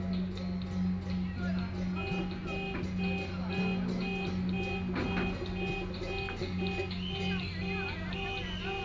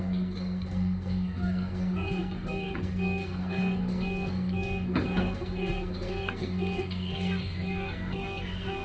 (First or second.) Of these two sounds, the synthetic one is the second